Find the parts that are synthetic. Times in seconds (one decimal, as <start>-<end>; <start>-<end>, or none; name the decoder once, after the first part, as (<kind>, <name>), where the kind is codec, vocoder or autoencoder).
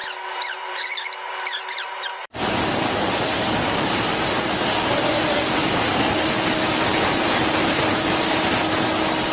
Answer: 0.0-2.9 (vocoder, BigVGAN v2); 6.9-8.6